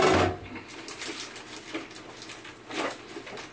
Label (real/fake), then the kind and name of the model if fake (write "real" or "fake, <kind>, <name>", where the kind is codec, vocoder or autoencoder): real